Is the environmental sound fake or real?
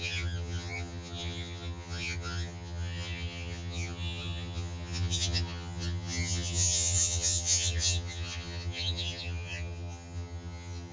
fake